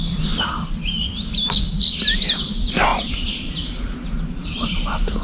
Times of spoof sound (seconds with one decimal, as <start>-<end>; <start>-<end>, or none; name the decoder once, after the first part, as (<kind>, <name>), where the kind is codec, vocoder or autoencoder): none